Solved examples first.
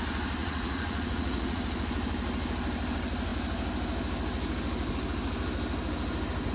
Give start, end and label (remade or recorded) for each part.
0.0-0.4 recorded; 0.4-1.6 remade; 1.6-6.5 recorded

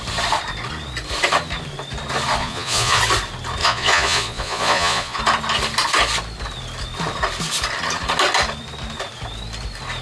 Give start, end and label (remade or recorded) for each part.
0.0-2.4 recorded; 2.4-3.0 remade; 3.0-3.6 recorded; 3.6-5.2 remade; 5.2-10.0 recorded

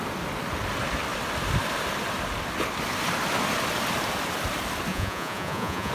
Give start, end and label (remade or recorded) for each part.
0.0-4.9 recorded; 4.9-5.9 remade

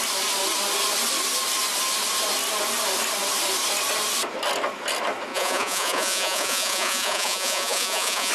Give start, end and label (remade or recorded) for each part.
0.0-5.3 recorded; 5.3-8.3 remade

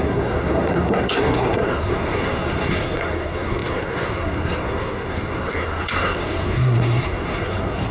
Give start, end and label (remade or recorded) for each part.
0.0-7.9 remade

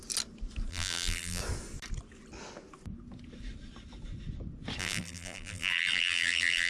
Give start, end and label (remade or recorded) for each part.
0.0-0.7 recorded; 0.7-1.4 remade; 1.4-4.8 recorded; 4.8-6.7 remade

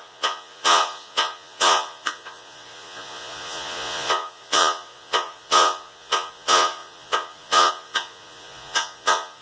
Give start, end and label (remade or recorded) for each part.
0.0-9.4 remade

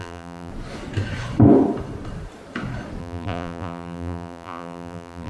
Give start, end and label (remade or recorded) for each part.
0.0-0.5 remade; 0.5-3.0 recorded; 3.0-5.3 remade